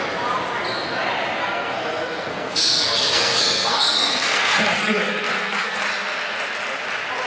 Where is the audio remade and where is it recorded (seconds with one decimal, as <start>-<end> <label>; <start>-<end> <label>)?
0.0-1.4 recorded; 1.4-5.8 remade; 5.8-7.3 recorded